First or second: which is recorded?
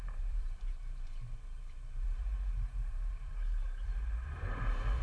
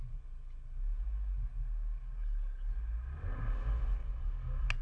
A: second